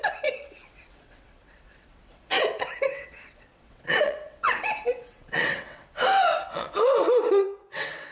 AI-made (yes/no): yes